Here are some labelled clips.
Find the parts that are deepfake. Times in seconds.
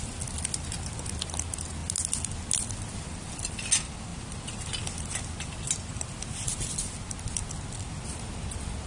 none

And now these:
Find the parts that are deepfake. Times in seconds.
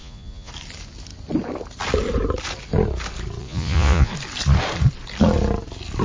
0.0-0.5; 3.4-4.1